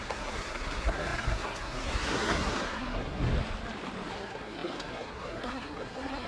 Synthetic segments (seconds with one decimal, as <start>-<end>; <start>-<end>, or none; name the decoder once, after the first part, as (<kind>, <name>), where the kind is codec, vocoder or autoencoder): 0.0-3.3 (codec, SNAC); 4.1-6.3